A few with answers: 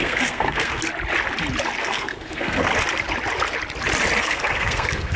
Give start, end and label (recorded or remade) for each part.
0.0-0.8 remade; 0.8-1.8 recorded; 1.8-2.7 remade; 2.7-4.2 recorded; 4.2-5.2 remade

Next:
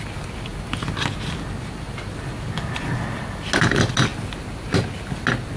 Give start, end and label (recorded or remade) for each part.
0.0-5.6 recorded

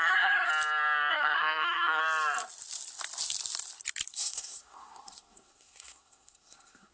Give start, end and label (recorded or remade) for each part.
0.0-0.5 remade; 0.5-1.1 recorded; 1.1-2.0 remade; 2.0-4.1 recorded; 4.1-6.9 remade

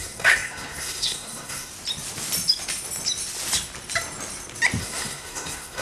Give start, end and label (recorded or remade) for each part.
0.0-1.7 remade; 1.7-4.8 recorded; 4.8-5.8 remade

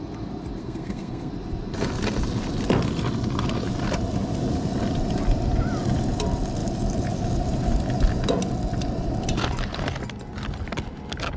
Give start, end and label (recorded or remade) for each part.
0.0-0.6 recorded; 0.6-1.3 remade; 1.3-11.4 recorded

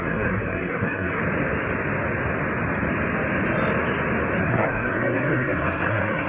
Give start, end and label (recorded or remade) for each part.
0.0-1.2 remade; 1.2-4.4 recorded; 4.4-6.3 remade